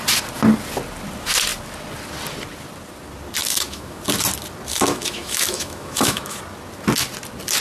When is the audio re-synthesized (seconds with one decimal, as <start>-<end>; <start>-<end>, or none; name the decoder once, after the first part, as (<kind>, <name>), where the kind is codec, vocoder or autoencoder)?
3.4-4.0 (autoencoder, DAC-VAE); 4.7-6.4